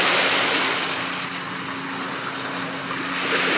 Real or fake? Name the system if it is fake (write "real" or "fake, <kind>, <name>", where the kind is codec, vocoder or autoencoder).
real